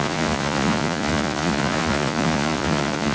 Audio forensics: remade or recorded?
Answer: remade